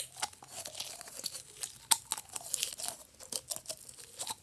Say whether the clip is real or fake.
real